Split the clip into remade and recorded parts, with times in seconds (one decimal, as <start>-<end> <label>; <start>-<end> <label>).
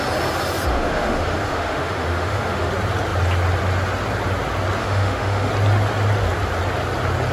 0.0-0.7 recorded; 0.7-2.7 remade; 2.7-4.8 recorded; 4.8-5.5 remade; 5.5-7.3 recorded